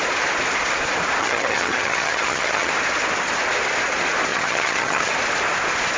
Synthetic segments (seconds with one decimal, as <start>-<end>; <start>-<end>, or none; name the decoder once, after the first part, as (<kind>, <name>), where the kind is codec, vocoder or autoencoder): 1.2-2.7 (vocoder, HiFi-GAN); 4.3-5.1